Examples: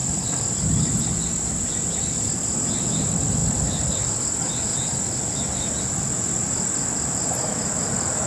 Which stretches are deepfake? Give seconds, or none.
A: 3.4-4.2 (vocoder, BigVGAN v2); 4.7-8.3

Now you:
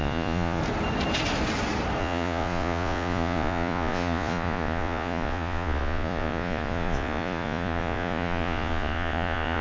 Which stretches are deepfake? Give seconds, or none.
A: 0.0-0.6 (vocoder, Vocos); 2.0-9.6

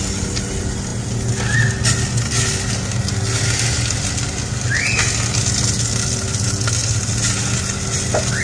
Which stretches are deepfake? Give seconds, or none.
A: none

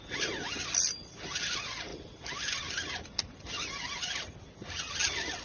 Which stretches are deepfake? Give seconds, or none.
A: none

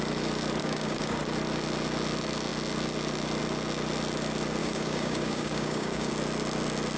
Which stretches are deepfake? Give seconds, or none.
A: 0.6-1.2 (codec, DAC); 4.6-6.1